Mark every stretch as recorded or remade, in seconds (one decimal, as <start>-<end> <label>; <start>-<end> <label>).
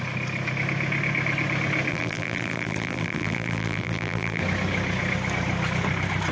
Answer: 0.0-1.9 recorded; 1.9-4.4 remade; 4.4-6.3 recorded